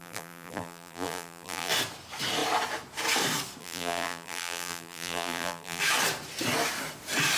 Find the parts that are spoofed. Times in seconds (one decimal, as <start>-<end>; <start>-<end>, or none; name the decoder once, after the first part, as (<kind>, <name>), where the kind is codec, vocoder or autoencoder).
0.0-1.7 (vocoder, BigVGAN v2); 3.6-5.8